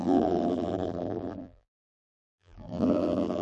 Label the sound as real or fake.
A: fake